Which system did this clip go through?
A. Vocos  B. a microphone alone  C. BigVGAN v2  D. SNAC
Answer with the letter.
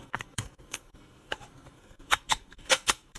D